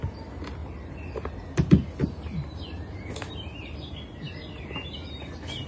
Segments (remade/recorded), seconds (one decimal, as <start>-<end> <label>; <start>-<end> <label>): 0.0-0.6 recorded; 0.6-1.3 remade; 1.3-5.7 recorded